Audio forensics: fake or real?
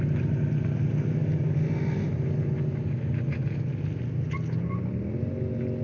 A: real